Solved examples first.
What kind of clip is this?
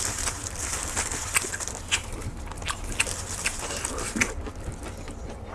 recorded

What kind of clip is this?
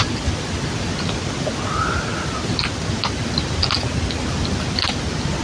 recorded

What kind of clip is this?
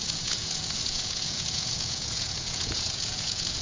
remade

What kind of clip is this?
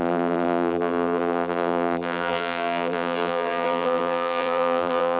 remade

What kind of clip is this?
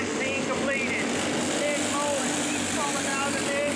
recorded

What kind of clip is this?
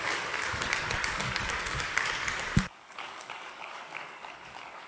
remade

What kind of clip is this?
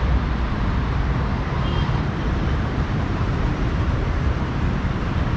remade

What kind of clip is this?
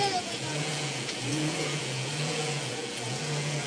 remade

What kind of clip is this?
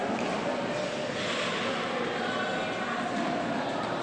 recorded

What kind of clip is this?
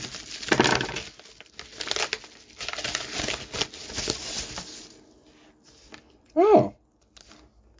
recorded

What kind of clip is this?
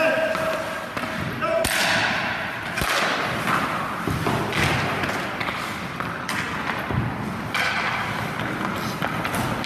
recorded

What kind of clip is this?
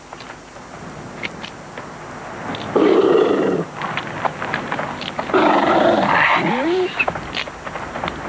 recorded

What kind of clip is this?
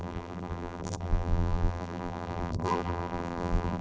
remade